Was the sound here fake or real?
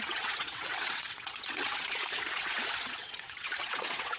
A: fake